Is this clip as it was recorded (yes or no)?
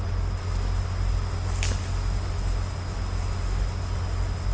yes